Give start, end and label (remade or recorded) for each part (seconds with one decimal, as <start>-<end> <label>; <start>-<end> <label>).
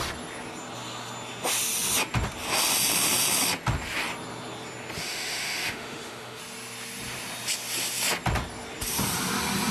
0.0-5.0 recorded; 5.0-6.4 remade; 6.4-9.7 recorded